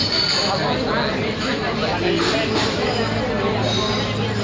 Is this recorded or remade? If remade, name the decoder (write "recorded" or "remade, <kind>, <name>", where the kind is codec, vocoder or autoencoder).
recorded